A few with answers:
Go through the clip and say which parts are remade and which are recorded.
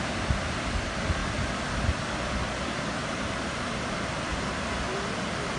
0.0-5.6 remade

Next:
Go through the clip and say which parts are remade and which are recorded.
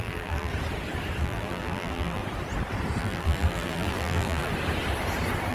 0.0-0.5 remade; 0.5-1.2 recorded; 1.2-2.2 remade; 2.2-3.0 recorded; 3.0-4.5 remade; 4.5-5.5 recorded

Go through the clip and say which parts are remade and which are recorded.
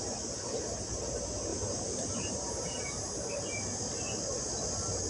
0.0-1.5 recorded; 1.5-3.3 remade; 3.3-5.1 recorded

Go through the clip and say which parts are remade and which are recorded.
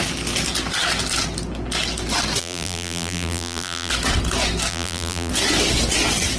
0.0-2.4 recorded; 2.4-3.9 remade; 3.9-4.7 recorded; 4.7-5.3 remade; 5.3-6.4 recorded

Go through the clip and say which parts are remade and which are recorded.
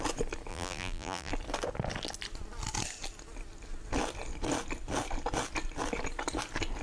0.0-0.5 recorded; 0.5-1.3 remade; 1.3-6.8 recorded